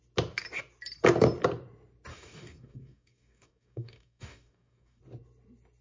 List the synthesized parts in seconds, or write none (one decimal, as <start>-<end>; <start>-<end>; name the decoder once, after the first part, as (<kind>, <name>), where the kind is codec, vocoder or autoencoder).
2.1-5.0 (codec, DAC)